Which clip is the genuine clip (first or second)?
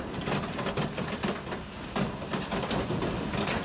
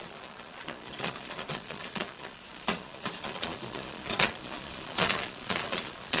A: first